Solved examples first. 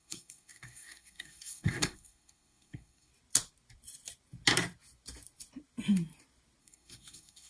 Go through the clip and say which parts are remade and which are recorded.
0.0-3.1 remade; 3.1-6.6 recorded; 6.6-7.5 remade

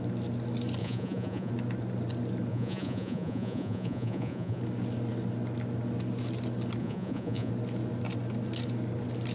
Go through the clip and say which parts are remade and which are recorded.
0.0-0.8 recorded; 0.8-1.5 remade; 1.5-2.5 recorded; 2.5-4.6 remade; 4.6-6.8 recorded; 6.8-7.5 remade; 7.5-9.3 recorded

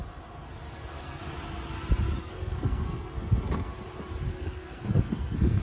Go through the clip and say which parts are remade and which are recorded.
0.0-0.7 recorded; 0.7-1.2 remade; 1.2-2.2 recorded; 2.2-3.7 remade; 3.7-4.3 recorded; 4.3-5.6 remade

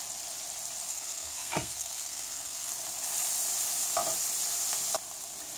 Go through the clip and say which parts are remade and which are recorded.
0.0-0.9 recorded; 0.9-2.7 remade; 2.7-5.6 recorded

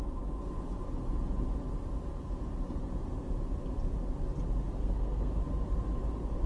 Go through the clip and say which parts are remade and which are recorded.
0.0-4.8 recorded; 4.8-5.4 remade; 5.4-6.5 recorded

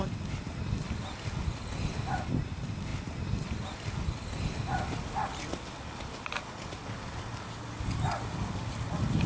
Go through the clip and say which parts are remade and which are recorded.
0.0-9.3 recorded

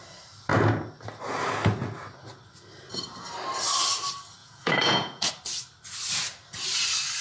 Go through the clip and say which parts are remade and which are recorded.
0.0-4.4 recorded; 4.4-5.3 remade; 5.3-7.2 recorded